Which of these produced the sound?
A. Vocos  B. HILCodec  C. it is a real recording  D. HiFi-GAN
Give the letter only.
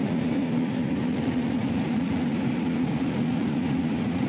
A